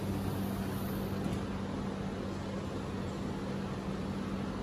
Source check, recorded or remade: recorded